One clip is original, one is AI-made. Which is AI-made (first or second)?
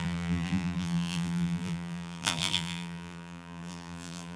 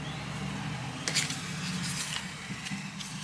first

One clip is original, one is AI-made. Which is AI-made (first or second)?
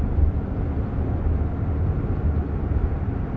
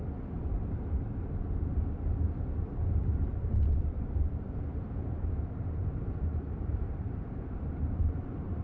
second